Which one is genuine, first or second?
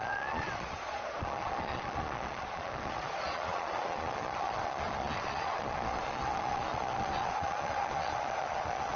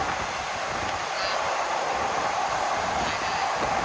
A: second